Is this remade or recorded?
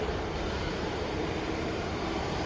remade